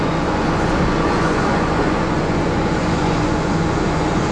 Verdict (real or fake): fake